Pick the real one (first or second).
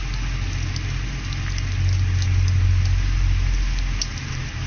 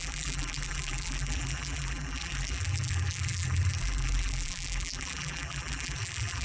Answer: first